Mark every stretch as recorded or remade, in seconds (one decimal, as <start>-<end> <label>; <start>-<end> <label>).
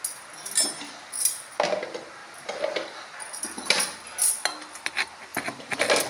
0.0-2.2 recorded; 2.2-4.0 remade; 4.0-5.3 recorded; 5.3-6.1 remade